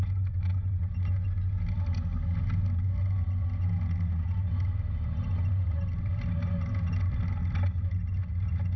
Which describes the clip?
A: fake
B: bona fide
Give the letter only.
B